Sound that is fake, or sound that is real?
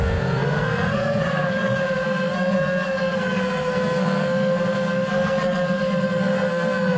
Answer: fake